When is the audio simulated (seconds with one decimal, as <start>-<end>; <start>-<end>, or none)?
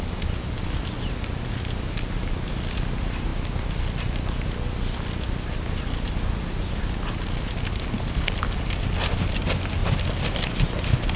none